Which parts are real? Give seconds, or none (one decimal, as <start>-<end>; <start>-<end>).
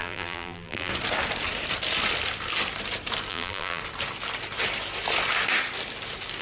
0.9-3.3; 3.8-6.4